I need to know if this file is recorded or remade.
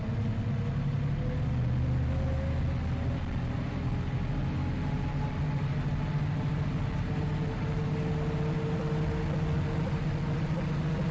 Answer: recorded